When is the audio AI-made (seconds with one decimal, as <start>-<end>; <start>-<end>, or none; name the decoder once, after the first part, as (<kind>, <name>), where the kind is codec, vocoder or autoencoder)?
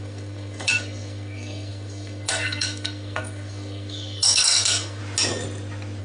0.0-5.0 (codec, SNAC)